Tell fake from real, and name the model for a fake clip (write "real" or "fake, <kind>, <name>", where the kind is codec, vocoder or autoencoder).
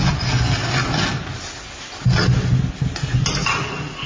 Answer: real